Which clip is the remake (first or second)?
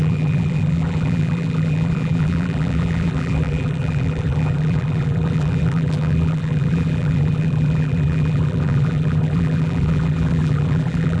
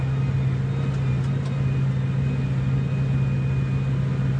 first